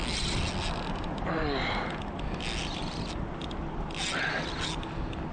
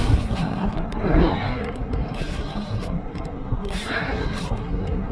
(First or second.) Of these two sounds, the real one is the first